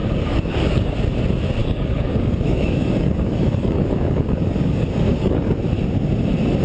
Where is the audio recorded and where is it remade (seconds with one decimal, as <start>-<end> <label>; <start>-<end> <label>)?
0.0-0.9 remade; 0.9-1.6 recorded; 1.6-5.6 remade; 5.6-6.6 recorded

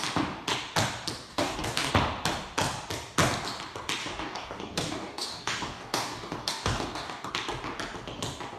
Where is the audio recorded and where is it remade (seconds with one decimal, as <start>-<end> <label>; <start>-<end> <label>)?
0.0-1.3 recorded; 1.3-1.9 remade; 1.9-4.0 recorded; 4.0-7.3 remade; 7.3-8.6 recorded